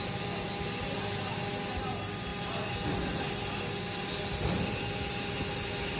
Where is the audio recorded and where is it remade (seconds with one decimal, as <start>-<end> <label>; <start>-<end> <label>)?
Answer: 0.0-6.0 recorded